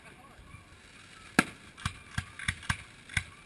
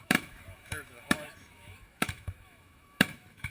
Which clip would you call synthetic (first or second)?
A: second